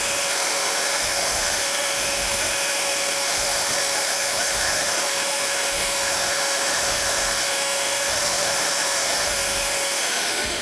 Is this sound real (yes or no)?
no